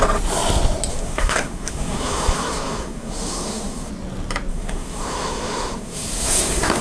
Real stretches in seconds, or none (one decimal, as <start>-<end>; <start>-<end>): 0.0-0.9; 3.9-4.5